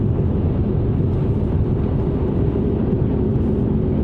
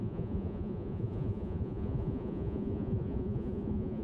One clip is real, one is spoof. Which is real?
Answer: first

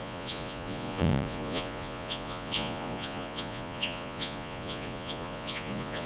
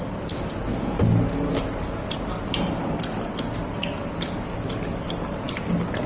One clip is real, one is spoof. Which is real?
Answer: second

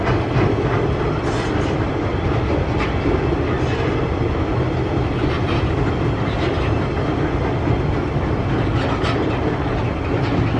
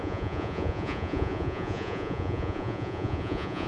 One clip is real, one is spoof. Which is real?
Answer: first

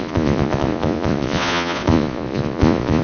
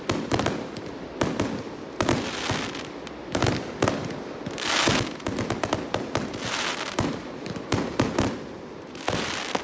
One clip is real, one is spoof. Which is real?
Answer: second